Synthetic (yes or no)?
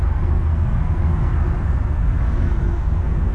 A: yes